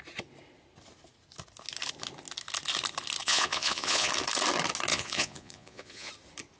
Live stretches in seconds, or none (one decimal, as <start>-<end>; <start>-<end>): 0.0-3.2; 4.1-4.9; 6.1-6.6